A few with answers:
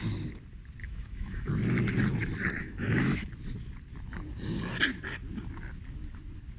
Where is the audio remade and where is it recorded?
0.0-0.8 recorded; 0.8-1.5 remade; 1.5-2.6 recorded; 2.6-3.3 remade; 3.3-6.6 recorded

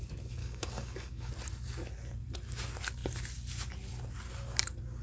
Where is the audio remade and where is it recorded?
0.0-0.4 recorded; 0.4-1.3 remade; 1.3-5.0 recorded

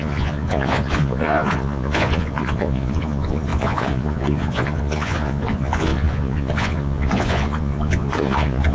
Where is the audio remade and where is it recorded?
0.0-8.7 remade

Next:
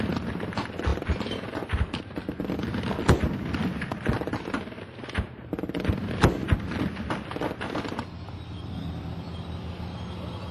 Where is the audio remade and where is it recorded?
0.0-10.5 recorded